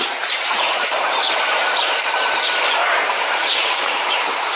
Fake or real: fake